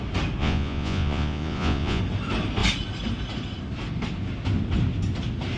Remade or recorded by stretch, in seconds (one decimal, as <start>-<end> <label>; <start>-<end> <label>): 0.0-0.4 recorded; 0.4-2.0 remade; 2.0-5.6 recorded